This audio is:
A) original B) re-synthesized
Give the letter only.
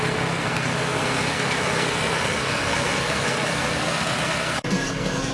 B